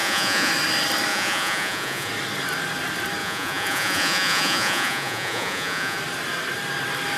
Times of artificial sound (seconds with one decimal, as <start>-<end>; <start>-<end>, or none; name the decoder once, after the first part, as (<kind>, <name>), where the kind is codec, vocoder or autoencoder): 0.0-0.5 (vocoder, Vocos); 1.1-2.1; 3.2-6.0